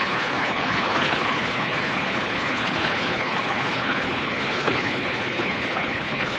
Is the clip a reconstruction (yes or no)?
yes